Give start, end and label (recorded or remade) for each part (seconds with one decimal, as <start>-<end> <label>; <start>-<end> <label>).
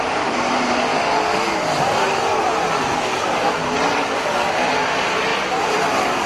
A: 0.0-0.9 remade; 0.9-1.8 recorded; 1.8-2.5 remade; 2.5-4.8 recorded; 4.8-6.3 remade